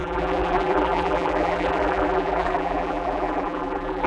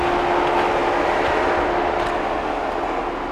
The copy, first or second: first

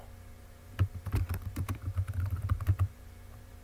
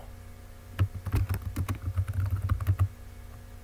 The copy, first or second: first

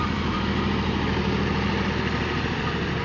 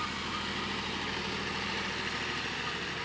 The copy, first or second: first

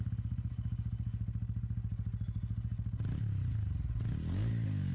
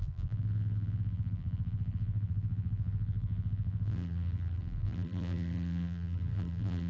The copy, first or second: second